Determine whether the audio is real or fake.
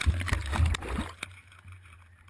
fake